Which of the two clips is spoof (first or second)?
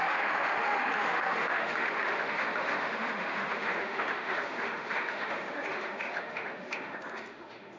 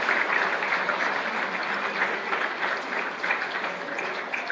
first